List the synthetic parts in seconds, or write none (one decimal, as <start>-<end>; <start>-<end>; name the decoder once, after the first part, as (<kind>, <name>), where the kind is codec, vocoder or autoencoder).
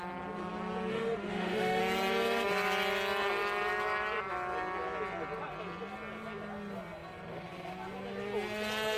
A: 0.9-1.8 (autoencoder, DAC-VAE)